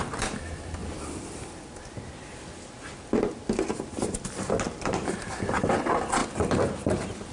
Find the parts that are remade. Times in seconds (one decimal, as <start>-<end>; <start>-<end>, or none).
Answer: 6.2-7.3